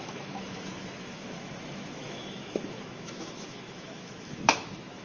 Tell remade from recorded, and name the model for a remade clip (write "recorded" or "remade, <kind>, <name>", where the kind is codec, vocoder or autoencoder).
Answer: remade, autoencoder, DAC-VAE